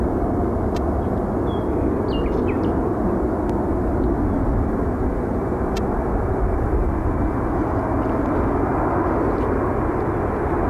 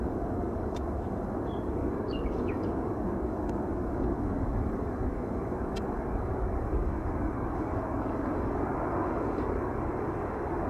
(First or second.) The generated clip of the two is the second